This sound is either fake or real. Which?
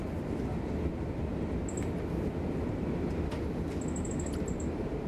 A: real